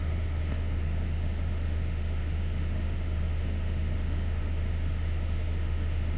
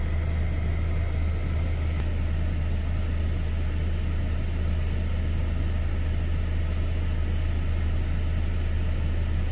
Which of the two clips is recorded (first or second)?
second